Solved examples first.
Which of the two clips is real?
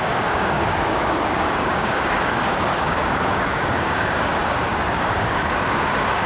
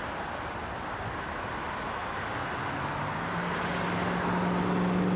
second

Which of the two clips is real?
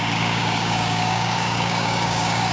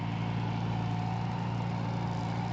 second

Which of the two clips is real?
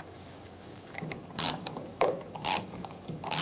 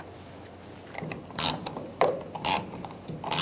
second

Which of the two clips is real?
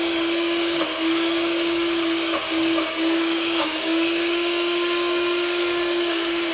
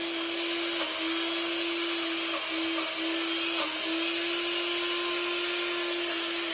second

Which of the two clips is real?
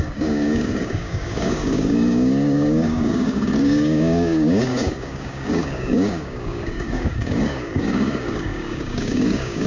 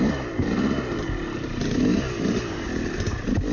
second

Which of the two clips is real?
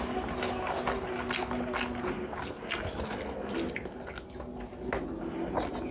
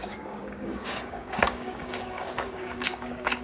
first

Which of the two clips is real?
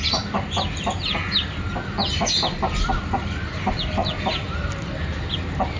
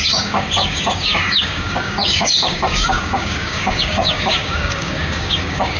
first